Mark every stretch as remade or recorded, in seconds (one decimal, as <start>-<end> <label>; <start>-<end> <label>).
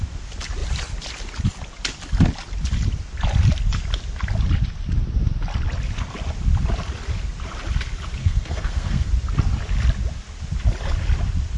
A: 0.0-8.2 recorded; 8.2-9.1 remade; 9.1-11.6 recorded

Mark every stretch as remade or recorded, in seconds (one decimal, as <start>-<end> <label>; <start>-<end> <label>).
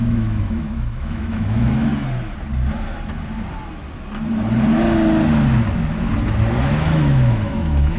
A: 0.0-1.9 remade; 1.9-6.6 recorded; 6.6-8.0 remade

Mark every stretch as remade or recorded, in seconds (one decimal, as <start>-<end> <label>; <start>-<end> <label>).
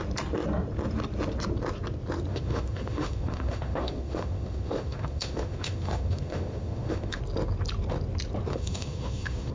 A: 0.0-2.3 recorded; 2.3-7.2 remade; 7.2-8.5 recorded; 8.5-9.5 remade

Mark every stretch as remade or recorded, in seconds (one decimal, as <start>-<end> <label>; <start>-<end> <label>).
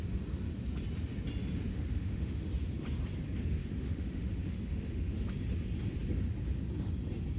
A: 0.0-1.7 recorded; 1.7-2.5 remade; 2.5-3.6 recorded; 3.6-5.2 remade; 5.2-7.4 recorded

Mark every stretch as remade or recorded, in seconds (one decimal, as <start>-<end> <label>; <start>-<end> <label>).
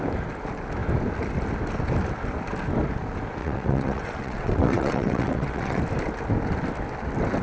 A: 0.0-3.4 recorded; 3.4-5.8 remade; 5.8-7.4 recorded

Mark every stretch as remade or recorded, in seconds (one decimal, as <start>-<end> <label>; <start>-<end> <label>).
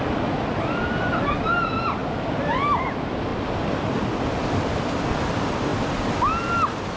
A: 0.0-7.0 recorded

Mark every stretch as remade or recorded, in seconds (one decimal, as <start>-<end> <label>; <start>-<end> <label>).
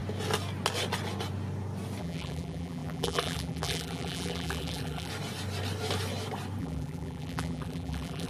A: 0.0-2.0 recorded; 2.0-5.1 remade; 5.1-6.6 recorded; 6.6-8.3 remade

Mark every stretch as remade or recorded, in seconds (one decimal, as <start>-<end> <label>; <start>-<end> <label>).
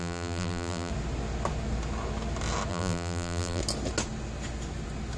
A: 0.0-0.9 remade; 0.9-2.7 recorded; 2.7-3.6 remade; 3.6-5.2 recorded